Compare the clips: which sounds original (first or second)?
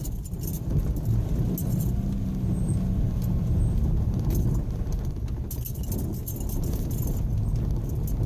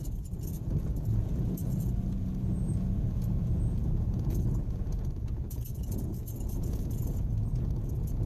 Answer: first